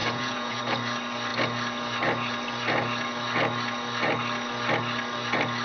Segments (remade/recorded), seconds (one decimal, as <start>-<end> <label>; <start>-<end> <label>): 0.0-0.6 remade; 0.6-5.6 recorded